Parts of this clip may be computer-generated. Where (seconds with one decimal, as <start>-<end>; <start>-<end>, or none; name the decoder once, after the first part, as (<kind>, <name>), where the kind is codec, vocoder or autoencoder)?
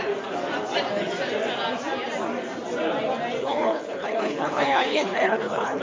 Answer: 3.4-5.8 (codec, HILCodec)